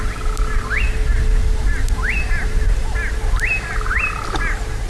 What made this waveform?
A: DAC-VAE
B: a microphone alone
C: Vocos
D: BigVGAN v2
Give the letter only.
B